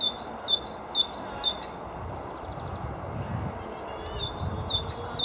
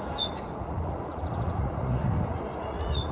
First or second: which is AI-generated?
second